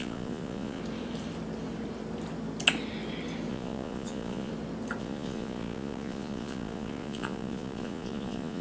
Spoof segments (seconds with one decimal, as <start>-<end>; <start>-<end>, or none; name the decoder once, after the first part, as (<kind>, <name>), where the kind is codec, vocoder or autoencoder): 0.0-0.8 (vocoder, Vocos); 3.5-4.5; 5.0-8.6